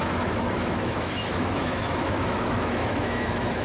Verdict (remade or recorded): remade